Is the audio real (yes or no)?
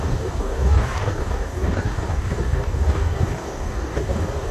no